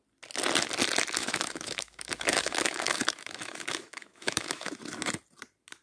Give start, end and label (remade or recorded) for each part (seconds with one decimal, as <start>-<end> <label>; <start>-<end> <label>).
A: 0.0-1.2 recorded; 1.2-4.7 remade; 4.7-5.8 recorded